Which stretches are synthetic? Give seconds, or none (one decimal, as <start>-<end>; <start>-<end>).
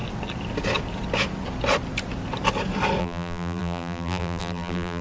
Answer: 3.0-5.0